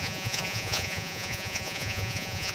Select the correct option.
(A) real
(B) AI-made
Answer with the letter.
B